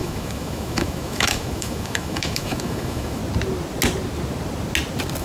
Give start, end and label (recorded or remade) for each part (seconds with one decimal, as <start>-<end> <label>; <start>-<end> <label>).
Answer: 0.0-3.2 remade; 3.2-5.2 recorded